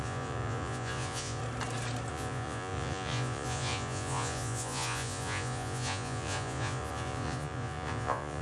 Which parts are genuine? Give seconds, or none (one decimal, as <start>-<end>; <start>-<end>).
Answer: 1.4-2.1